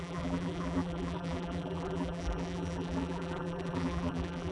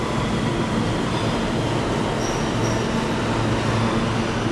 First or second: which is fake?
first